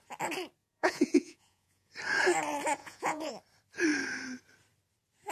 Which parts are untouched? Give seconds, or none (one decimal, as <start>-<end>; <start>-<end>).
0.0-0.6; 1.9-2.8; 3.3-5.3

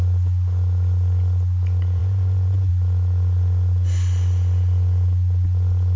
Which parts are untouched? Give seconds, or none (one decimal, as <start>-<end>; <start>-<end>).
0.0-2.0; 2.7-6.0

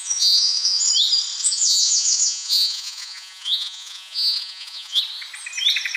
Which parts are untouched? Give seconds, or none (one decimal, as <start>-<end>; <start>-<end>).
0.9-1.4; 5.0-6.0

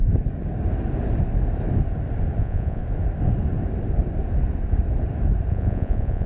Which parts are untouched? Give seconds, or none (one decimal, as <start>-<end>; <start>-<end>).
0.0-2.4; 2.8-5.5

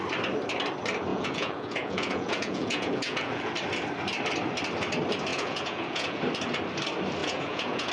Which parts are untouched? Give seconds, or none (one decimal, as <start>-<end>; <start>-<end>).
0.0-1.1; 3.5-5.3; 6.2-7.2